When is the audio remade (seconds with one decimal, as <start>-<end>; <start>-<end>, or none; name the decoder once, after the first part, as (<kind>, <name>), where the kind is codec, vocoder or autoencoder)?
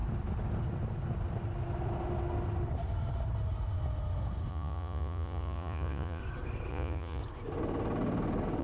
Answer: 4.5-6.2 (vocoder, Vocos); 6.7-7.2